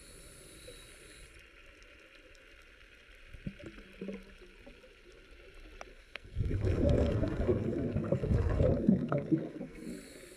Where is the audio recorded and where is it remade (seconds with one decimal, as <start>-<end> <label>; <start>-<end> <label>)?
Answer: 0.0-5.9 recorded; 5.9-9.9 remade; 9.9-10.4 recorded